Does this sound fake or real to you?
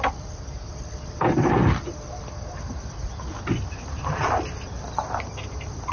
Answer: real